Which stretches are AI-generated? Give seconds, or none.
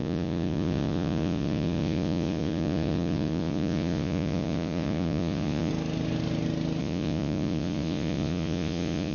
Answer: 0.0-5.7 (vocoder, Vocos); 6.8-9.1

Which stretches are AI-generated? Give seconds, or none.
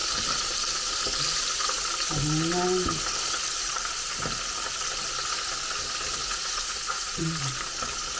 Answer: 6.2-7.4 (vocoder, Vocos)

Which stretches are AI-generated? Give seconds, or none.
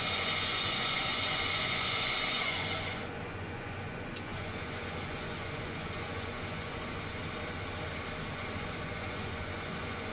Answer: 0.0-7.2 (vocoder, Vocos); 8.3-10.1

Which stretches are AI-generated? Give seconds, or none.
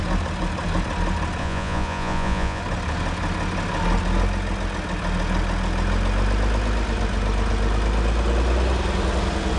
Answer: 1.4-2.6 (vocoder, Vocos)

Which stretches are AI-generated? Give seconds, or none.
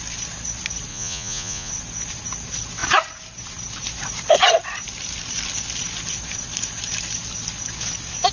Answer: 0.9-1.7 (vocoder, Vocos)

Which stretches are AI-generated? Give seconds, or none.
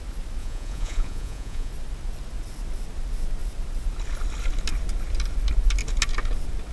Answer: 0.4-1.7 (vocoder, Vocos)